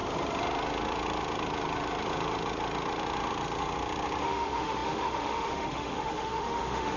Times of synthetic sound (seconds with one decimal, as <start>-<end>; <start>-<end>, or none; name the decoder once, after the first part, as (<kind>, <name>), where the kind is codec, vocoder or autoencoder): 4.2-7.0 (autoencoder, DAC-VAE)